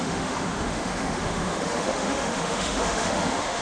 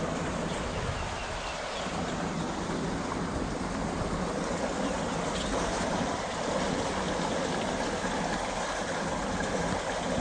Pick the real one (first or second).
second